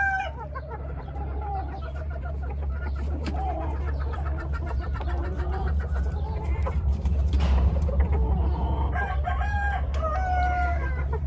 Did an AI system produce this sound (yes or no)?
yes